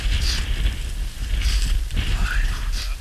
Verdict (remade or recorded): recorded